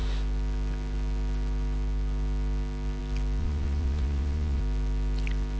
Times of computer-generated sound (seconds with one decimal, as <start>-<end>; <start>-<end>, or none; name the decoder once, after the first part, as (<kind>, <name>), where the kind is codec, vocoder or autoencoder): 3.4-4.6 (vocoder, Vocos)